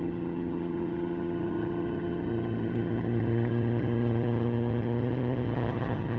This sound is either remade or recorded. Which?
remade